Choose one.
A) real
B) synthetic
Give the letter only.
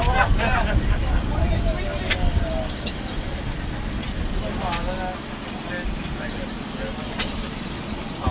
A